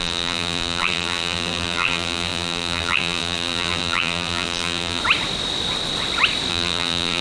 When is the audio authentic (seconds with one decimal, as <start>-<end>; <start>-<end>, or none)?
5.0-6.5